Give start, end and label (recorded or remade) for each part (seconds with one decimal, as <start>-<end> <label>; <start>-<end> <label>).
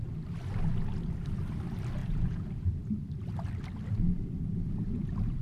0.0-2.0 recorded; 2.0-2.8 remade; 2.8-5.4 recorded